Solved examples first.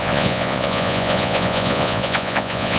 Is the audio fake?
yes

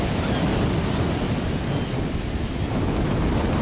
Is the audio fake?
no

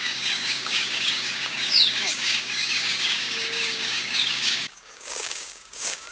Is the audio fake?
yes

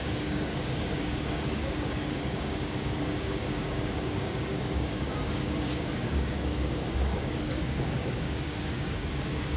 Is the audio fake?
yes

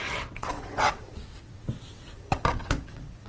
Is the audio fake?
yes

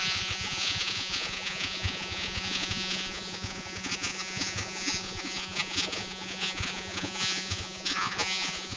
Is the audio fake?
yes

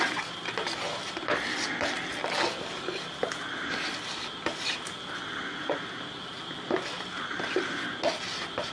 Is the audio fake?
no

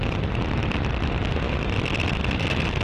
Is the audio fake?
no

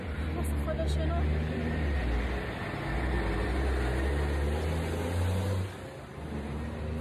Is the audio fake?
no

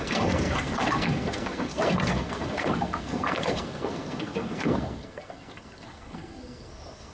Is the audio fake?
yes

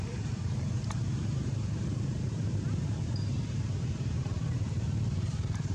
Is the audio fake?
yes